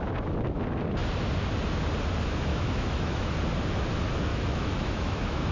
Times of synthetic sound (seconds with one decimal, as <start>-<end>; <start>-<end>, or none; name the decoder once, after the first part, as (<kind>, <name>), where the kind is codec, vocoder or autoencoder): 2.5-3.3 (autoencoder, DAC-VAE); 4.3-5.5